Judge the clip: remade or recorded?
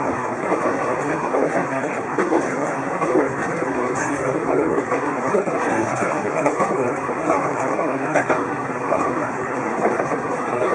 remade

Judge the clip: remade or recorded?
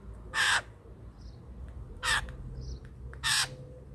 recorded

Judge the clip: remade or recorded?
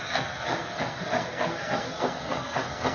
remade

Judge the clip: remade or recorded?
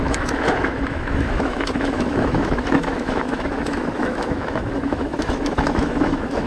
remade